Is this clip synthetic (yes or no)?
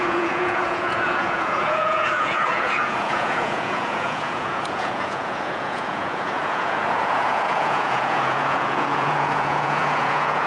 yes